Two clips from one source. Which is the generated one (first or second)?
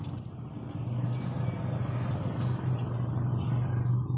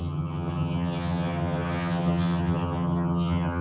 second